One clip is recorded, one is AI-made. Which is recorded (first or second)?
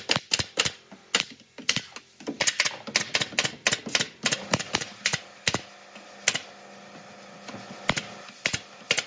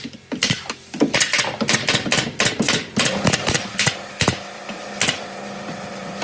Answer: first